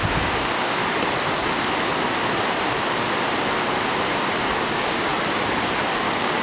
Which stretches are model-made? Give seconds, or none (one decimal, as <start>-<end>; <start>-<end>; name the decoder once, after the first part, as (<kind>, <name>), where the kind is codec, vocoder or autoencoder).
0.0-0.8 (codec, DAC); 4.6-5.1; 5.9-6.4